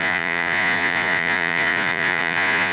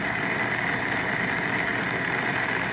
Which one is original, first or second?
second